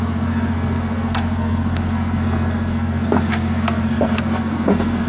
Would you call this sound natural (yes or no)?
no